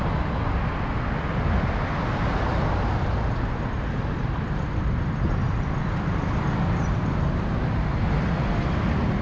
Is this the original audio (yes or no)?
yes